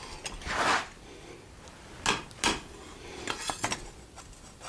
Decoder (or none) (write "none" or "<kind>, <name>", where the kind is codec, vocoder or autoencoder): none